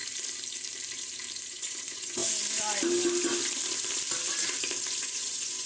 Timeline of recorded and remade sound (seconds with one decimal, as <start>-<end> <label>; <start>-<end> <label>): 0.0-1.5 recorded; 1.5-2.2 remade; 2.2-5.0 recorded; 5.0-5.7 remade